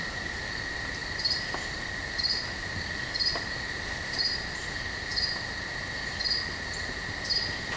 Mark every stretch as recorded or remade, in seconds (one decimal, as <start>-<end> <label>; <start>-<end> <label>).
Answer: 0.0-7.8 recorded